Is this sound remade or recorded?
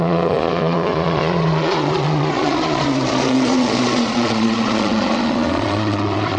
remade